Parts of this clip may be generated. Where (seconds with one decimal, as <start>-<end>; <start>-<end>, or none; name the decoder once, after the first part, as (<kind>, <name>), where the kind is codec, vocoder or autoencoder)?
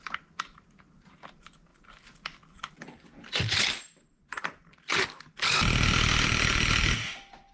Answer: 1.7-5.2 (vocoder, BigVGAN v2)